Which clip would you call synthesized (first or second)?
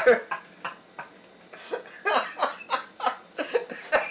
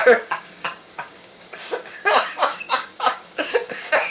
second